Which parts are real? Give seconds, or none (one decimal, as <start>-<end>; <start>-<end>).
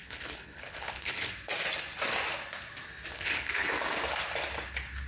1.3-3.1; 3.7-5.1